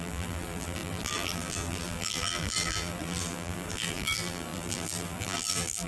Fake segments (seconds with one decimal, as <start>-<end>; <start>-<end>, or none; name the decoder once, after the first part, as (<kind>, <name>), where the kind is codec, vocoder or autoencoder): 0.0-5.9 (vocoder, BigVGAN v2)